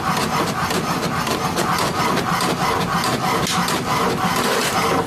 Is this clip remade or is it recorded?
recorded